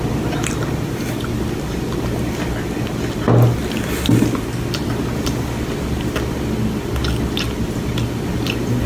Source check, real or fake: real